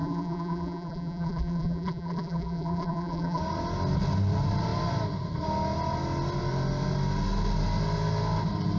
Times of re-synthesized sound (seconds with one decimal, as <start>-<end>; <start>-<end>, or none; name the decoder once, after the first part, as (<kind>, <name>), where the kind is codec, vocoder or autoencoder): 0.0-3.4 (vocoder, BigVGAN v2)